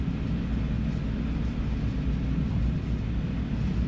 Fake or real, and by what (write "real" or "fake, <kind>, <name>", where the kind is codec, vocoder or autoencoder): real